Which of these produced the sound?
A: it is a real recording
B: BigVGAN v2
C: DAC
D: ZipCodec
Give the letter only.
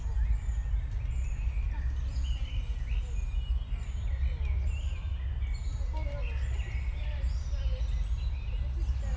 A